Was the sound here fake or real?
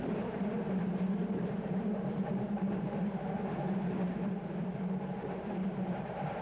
fake